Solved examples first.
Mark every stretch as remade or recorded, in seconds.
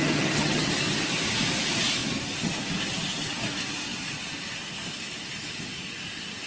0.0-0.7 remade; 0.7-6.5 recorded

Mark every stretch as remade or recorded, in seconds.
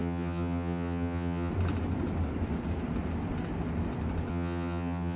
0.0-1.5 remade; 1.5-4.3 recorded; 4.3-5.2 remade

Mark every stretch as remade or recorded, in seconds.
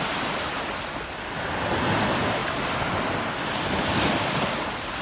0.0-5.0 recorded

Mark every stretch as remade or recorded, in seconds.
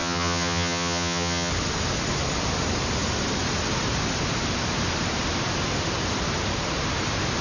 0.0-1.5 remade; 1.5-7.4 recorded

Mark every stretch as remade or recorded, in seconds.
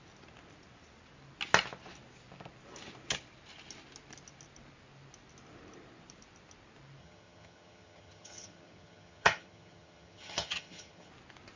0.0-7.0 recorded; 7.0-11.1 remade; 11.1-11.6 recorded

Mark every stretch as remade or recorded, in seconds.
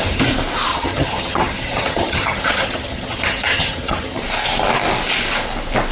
0.0-0.7 recorded; 0.7-4.2 remade; 4.2-5.9 recorded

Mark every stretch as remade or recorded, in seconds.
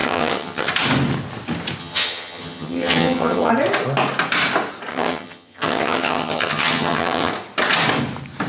0.0-0.7 remade; 0.7-1.8 recorded; 1.8-3.5 remade; 3.5-4.9 recorded; 4.9-7.3 remade; 7.3-8.5 recorded